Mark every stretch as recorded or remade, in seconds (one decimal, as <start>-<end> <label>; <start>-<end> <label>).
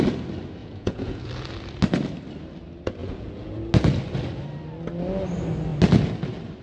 0.0-0.6 recorded; 0.6-1.3 remade; 1.3-3.0 recorded; 3.0-3.6 remade; 3.6-6.6 recorded